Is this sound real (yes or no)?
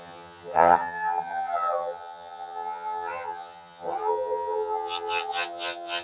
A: no